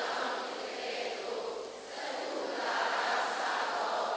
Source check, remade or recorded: recorded